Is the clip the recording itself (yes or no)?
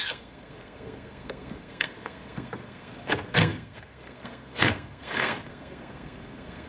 no